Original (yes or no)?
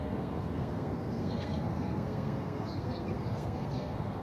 no